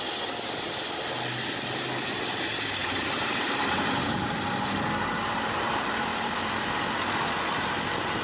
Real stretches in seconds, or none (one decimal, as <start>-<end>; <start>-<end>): 0.0-2.8; 4.4-6.1; 6.8-8.2